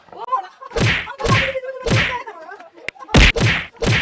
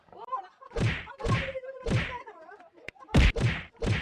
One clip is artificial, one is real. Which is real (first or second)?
first